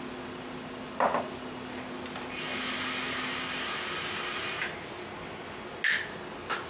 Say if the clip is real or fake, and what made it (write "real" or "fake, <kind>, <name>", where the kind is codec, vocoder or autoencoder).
real